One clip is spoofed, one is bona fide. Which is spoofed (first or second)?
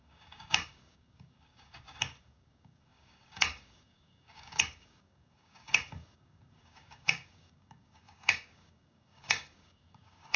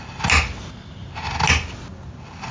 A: first